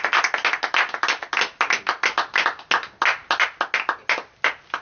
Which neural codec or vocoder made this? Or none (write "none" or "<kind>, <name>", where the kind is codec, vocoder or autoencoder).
none